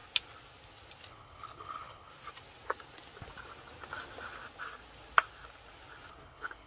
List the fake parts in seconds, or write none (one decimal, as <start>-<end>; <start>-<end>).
1.1-2.1; 6.1-6.7